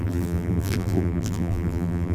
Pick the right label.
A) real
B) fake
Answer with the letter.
B